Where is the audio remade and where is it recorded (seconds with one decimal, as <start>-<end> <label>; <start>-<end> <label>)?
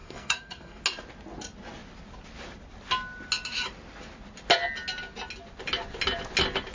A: 0.0-0.8 remade; 0.8-6.7 recorded